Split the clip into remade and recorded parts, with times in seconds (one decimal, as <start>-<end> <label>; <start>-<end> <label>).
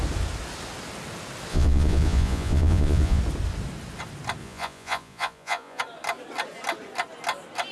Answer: 0.0-1.5 recorded; 1.5-3.2 remade; 3.2-4.4 recorded; 4.4-5.8 remade; 5.8-7.7 recorded